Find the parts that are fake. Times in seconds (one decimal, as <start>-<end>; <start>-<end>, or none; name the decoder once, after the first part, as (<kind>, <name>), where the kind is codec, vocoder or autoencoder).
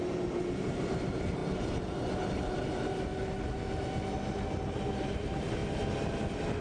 0.0-1.4 (vocoder, BigVGAN v2); 2.4-3.1; 4.9-5.6